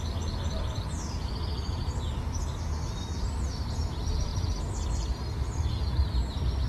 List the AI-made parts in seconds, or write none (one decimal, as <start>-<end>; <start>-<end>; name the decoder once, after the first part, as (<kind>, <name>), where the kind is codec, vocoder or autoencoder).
0.0-1.8 (vocoder, BigVGAN v2); 3.0-4.3; 5.4-6.7